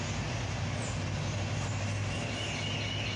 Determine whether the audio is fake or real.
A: real